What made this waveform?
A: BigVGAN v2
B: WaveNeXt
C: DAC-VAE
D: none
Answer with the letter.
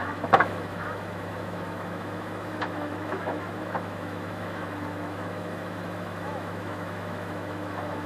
C